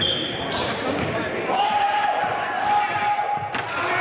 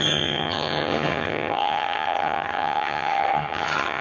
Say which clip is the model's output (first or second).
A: second